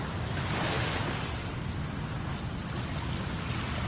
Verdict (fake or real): real